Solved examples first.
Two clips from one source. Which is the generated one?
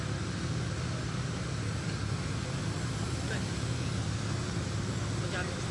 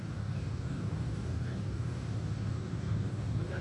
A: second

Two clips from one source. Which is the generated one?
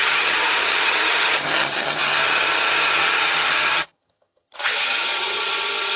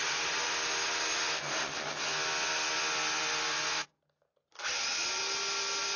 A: first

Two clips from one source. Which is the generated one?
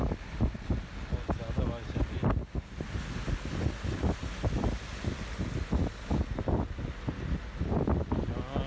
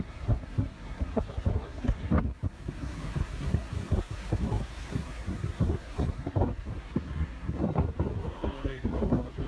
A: second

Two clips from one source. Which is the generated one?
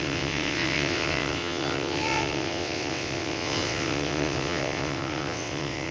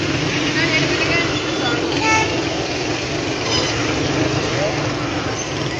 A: first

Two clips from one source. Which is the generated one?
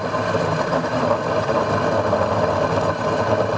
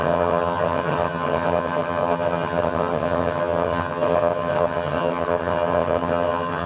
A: second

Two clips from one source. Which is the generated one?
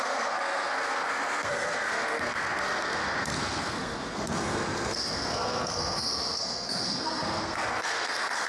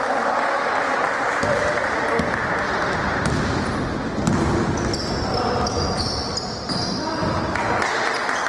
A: first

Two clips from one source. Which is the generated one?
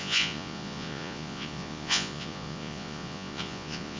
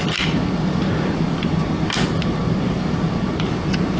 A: first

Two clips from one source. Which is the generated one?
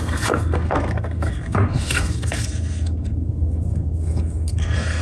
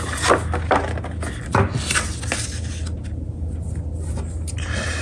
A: first